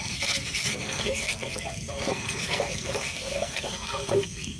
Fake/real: fake